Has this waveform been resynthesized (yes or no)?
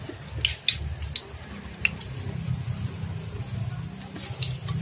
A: no